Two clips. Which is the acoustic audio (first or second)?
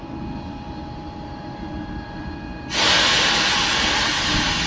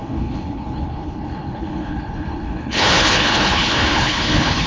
first